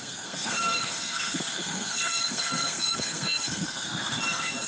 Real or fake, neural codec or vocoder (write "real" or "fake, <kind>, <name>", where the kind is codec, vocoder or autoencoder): fake, codec, SNAC